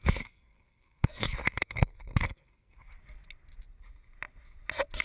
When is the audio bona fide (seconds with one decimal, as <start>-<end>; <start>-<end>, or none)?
3.0-5.0